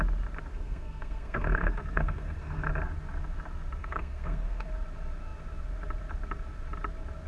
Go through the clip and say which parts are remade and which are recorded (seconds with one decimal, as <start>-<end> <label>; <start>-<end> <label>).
0.0-0.5 recorded; 0.5-2.7 remade; 2.7-3.8 recorded; 3.8-4.7 remade; 4.7-7.3 recorded